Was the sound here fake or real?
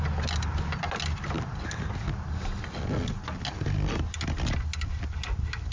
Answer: real